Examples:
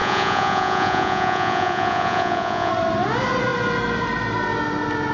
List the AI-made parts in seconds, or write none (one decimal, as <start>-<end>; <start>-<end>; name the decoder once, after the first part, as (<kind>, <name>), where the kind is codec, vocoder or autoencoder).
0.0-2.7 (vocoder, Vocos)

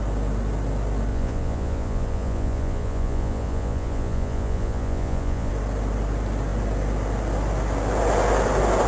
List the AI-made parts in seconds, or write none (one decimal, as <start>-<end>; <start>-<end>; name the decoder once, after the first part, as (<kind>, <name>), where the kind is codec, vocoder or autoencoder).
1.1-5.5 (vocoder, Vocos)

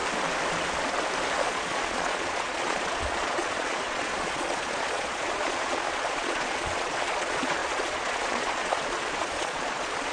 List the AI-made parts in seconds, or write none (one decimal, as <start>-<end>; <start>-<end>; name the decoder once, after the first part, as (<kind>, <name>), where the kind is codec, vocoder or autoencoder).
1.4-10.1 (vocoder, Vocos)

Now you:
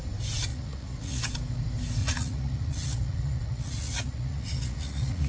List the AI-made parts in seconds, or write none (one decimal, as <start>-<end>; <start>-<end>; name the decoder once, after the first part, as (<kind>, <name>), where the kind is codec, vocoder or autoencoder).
0.5-1.2 (vocoder, Vocos); 2.0-5.3

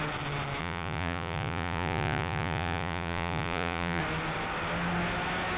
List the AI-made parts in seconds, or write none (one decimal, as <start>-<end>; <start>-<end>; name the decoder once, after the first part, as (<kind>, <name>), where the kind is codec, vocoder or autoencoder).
0.6-4.0 (vocoder, Vocos)